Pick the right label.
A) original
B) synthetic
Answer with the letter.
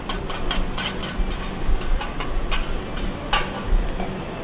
A